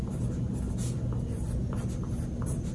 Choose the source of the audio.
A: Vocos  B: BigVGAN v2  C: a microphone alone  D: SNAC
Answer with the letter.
C